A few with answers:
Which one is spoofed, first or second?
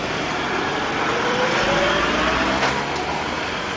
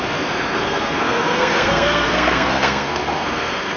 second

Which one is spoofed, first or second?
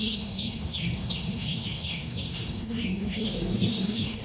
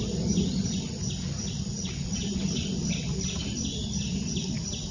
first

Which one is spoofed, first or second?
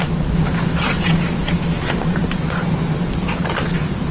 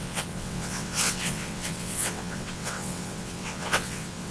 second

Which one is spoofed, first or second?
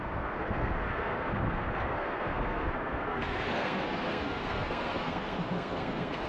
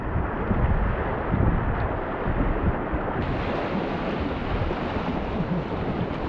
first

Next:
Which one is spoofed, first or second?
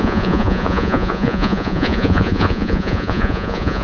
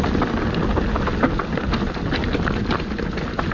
first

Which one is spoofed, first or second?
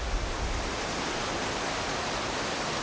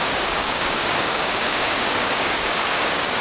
second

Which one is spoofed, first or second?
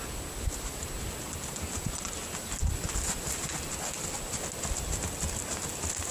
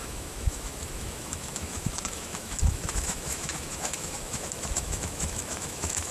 second